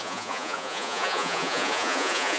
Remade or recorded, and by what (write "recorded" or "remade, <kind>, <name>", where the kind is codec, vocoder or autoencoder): remade, vocoder, Vocos